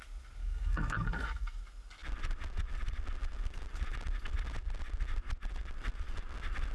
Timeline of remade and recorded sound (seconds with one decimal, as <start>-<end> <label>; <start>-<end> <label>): 0.0-0.4 recorded; 0.4-1.6 remade; 1.6-6.7 recorded